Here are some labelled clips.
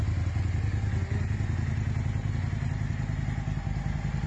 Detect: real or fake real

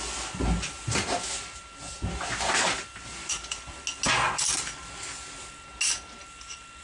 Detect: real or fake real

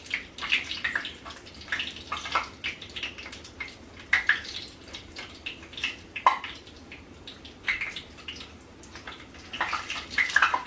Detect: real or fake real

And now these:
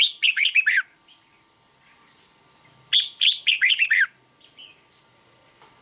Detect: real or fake real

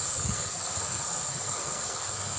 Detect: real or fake fake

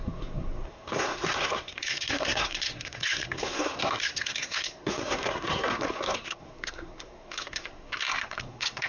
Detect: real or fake fake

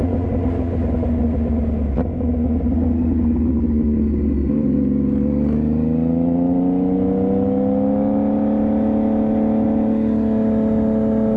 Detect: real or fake real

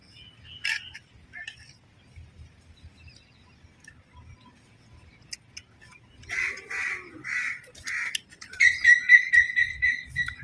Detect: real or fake real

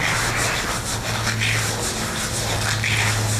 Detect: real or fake real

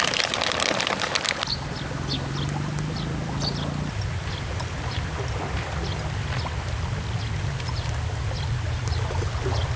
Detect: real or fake real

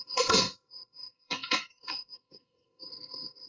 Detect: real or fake fake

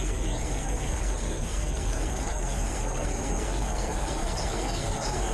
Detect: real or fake fake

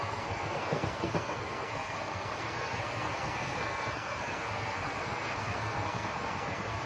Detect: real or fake fake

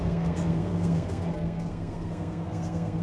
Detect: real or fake fake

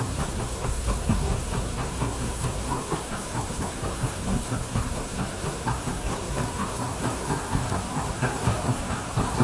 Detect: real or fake fake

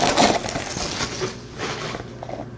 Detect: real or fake real